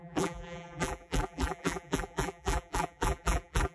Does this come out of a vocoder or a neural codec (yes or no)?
yes